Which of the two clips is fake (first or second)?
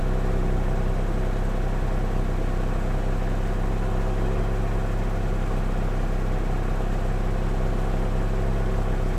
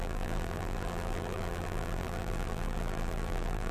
second